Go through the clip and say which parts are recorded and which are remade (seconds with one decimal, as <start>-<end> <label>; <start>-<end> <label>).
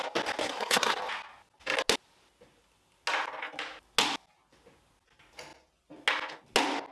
0.0-0.4 recorded; 0.4-1.0 remade; 1.0-6.9 recorded